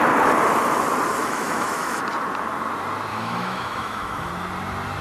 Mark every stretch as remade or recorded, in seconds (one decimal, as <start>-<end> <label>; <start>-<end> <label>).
0.0-1.2 recorded; 1.2-2.0 remade; 2.0-3.1 recorded; 3.1-4.3 remade; 4.3-5.0 recorded